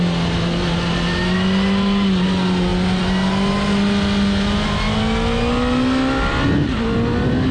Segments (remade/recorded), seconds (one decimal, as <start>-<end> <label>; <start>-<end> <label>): 0.0-7.5 recorded